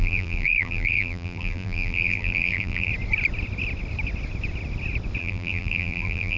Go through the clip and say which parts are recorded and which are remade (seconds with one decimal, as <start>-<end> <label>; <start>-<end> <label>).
0.0-2.9 remade; 2.9-5.2 recorded; 5.2-6.4 remade

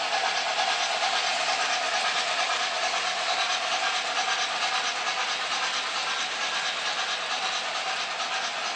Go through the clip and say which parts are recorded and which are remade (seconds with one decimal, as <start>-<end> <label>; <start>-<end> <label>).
0.0-8.8 recorded

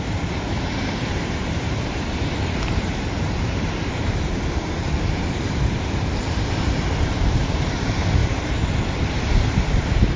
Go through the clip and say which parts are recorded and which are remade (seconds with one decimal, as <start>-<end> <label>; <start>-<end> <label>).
0.0-10.2 remade

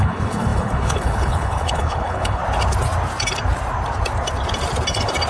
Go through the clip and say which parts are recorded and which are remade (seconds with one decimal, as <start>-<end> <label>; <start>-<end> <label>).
0.0-2.4 remade; 2.4-5.3 recorded

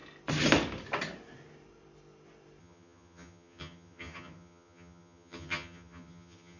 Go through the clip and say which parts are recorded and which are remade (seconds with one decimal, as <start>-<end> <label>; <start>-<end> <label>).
0.0-2.6 recorded; 2.6-6.6 remade

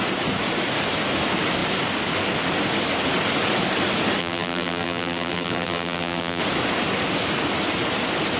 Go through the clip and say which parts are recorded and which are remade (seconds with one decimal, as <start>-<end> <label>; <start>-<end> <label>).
0.0-4.2 recorded; 4.2-6.4 remade; 6.4-8.4 recorded

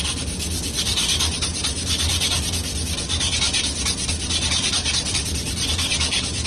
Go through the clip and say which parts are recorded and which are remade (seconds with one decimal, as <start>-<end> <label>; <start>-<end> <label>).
0.0-6.5 recorded

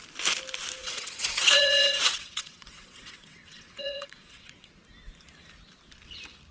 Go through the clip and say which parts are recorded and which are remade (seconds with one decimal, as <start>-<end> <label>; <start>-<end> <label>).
0.0-0.8 recorded; 0.8-4.7 remade; 4.7-6.5 recorded